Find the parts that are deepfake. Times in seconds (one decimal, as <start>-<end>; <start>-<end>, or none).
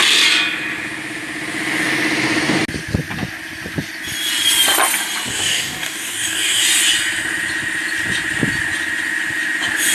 5.3-6.6